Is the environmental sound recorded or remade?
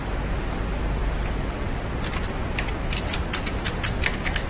recorded